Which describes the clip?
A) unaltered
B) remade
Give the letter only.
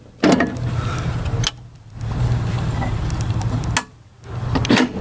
A